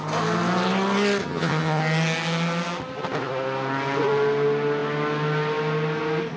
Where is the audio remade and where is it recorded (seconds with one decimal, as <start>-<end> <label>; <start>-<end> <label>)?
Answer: 0.0-1.2 recorded; 1.2-1.8 remade; 1.8-6.4 recorded